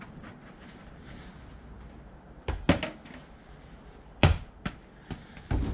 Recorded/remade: recorded